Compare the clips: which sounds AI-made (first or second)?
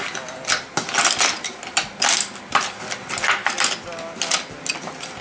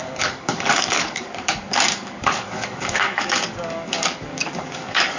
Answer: second